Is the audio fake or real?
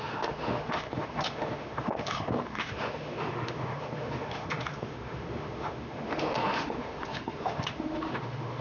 fake